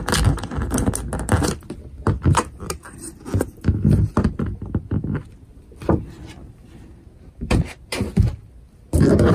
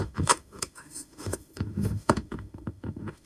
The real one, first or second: first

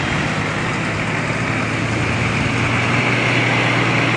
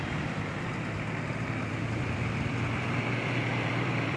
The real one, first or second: first